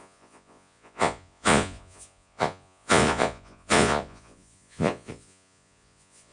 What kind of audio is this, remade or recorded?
remade